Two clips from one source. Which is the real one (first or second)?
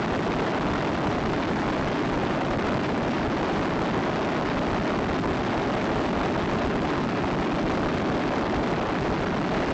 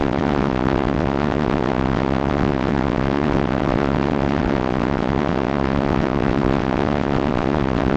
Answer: first